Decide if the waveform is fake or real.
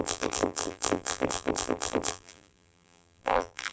fake